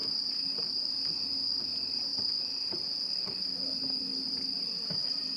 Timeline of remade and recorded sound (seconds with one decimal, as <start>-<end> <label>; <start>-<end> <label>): 0.0-5.4 recorded

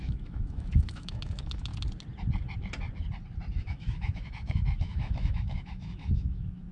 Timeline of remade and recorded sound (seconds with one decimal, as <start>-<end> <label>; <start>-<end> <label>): 0.0-1.7 remade; 1.7-3.5 recorded; 3.5-6.7 remade

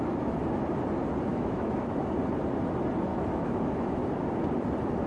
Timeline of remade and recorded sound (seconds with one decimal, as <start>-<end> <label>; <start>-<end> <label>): 0.0-1.3 recorded; 1.3-2.0 remade; 2.0-3.1 recorded; 3.1-3.6 remade; 3.6-5.1 recorded

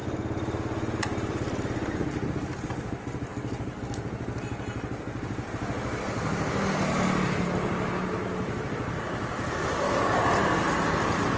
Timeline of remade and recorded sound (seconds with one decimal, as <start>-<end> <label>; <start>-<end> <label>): 0.0-11.4 recorded